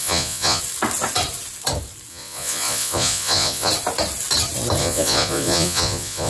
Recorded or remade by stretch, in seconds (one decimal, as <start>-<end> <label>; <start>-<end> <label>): 0.0-0.6 remade; 0.6-2.1 recorded; 2.1-3.7 remade; 3.7-4.8 recorded; 4.8-6.3 remade